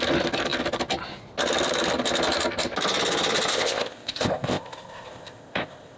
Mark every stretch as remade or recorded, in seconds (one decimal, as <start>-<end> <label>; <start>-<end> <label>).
0.0-3.5 recorded; 3.5-6.0 remade